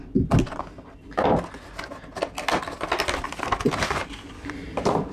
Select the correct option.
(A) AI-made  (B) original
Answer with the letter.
B